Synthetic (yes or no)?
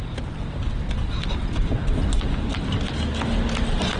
no